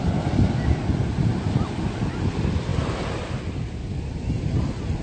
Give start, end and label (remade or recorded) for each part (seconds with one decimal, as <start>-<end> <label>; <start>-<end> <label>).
0.0-5.0 recorded